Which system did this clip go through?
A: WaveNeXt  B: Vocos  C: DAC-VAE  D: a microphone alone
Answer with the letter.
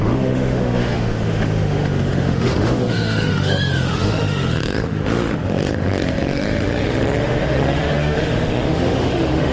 C